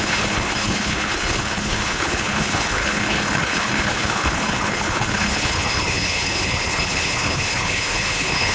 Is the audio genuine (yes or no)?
no